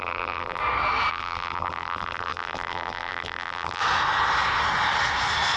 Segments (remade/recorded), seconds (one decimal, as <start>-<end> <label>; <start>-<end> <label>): 0.0-0.6 remade; 0.6-1.1 recorded; 1.1-3.8 remade; 3.8-5.6 recorded